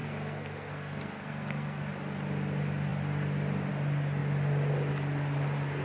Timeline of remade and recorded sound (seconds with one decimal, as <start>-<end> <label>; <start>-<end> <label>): 0.0-1.9 remade; 1.9-5.8 recorded